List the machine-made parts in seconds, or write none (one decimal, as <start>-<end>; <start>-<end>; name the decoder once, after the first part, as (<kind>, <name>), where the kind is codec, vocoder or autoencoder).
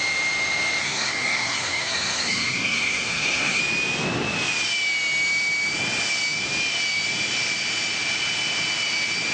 0.8-3.6 (codec, SNAC)